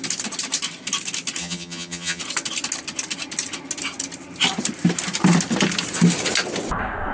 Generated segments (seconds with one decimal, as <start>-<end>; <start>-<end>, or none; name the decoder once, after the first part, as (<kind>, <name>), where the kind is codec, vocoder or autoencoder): 1.4-2.2 (vocoder, HiFi-GAN)

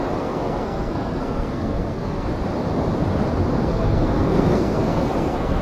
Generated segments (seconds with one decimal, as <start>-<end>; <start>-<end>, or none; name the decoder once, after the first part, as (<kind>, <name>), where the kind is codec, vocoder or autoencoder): 0.0-2.3 (codec, SNAC); 3.5-5.6

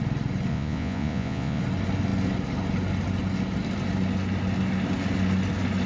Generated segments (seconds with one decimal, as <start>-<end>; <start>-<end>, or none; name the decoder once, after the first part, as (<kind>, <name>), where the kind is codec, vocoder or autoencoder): 0.5-1.6 (vocoder, Vocos)

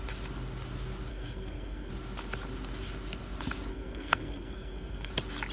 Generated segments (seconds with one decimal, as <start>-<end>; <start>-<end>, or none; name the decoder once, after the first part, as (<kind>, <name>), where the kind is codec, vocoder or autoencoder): 1.1-1.9 (codec, SNAC); 3.7-5.1

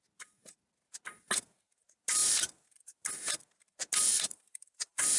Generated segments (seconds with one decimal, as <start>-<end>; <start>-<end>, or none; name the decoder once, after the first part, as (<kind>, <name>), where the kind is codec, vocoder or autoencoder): none

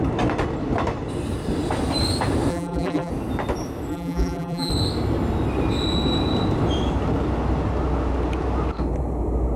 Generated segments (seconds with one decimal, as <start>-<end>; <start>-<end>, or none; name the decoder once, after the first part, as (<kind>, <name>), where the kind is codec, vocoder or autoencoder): 2.5-3.1 (vocoder, BigVGAN v2); 3.9-4.7

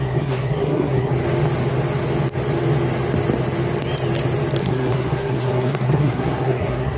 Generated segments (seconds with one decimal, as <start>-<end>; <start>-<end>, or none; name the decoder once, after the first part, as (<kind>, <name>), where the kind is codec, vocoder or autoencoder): 0.0-1.1 (codec, SNAC); 4.6-7.0

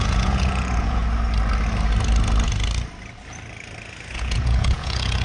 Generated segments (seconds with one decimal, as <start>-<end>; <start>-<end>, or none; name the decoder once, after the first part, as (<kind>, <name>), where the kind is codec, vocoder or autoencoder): 0.0-1.0 (vocoder, Vocos); 4.1-5.2